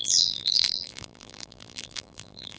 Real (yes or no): no